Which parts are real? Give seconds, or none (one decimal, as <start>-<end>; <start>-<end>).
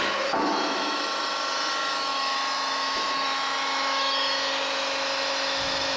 none